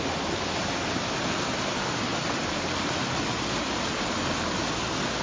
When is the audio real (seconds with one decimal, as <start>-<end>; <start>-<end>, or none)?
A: 0.0-5.2